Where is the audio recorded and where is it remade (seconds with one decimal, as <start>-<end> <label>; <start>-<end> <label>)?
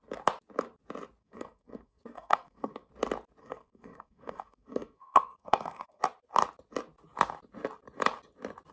0.0-1.2 recorded; 1.2-2.9 remade; 2.9-3.4 recorded; 3.4-6.0 remade; 6.0-8.7 recorded